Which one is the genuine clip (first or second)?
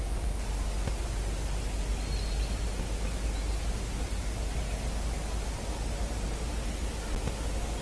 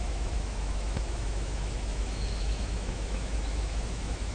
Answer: first